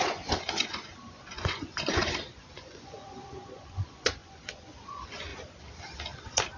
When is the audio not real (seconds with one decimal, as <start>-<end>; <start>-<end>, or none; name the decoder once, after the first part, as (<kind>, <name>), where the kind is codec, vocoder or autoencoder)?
0.0-5.3 (vocoder, Vocos)